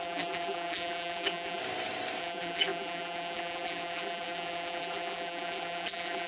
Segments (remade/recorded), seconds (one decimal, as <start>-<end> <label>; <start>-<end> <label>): 0.0-1.6 remade; 1.6-2.2 recorded; 2.2-6.3 remade